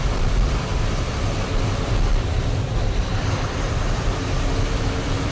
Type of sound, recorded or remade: remade